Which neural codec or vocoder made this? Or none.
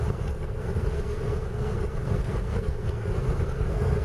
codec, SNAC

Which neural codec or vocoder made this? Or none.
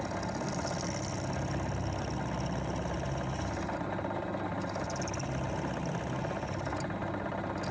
none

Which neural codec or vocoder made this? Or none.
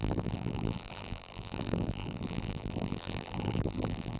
vocoder, BigVGAN v2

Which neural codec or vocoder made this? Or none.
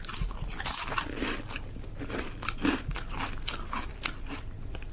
none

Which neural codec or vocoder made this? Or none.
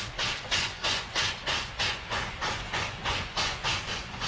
vocoder, Vocos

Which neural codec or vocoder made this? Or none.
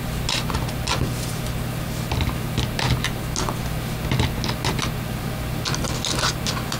none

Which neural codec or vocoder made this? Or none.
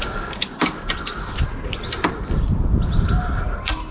none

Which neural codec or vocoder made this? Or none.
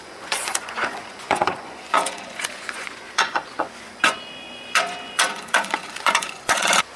vocoder, Vocos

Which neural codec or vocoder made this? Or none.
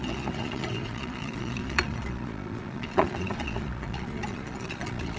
vocoder, Vocos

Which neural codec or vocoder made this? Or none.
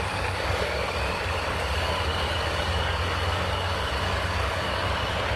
codec, DAC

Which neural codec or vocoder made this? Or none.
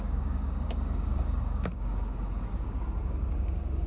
codec, DAC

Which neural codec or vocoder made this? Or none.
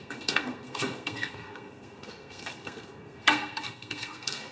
codec, SNAC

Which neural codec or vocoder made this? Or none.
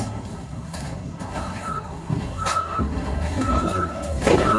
codec, SNAC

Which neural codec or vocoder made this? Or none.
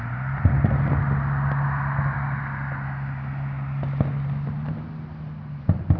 none